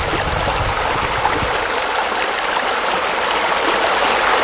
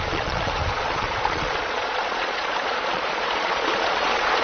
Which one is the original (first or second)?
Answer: first